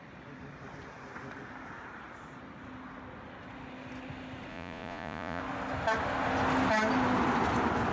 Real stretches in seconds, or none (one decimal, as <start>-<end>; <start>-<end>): 0.0-4.5; 5.4-7.9